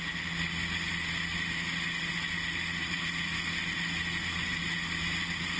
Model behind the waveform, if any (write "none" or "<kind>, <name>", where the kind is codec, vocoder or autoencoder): none